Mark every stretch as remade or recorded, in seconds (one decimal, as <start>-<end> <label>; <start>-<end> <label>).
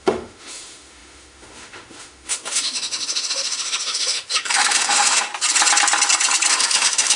0.0-5.3 remade; 5.3-6.5 recorded; 6.5-7.2 remade